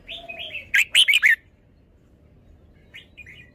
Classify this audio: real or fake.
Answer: real